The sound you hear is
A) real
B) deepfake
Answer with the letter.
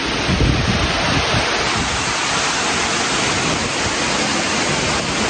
A